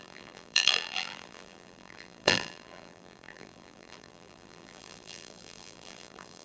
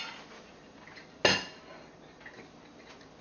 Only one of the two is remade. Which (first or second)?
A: first